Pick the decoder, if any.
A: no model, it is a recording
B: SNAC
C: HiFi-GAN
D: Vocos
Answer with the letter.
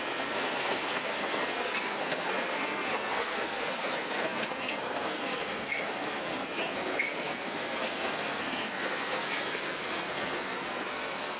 B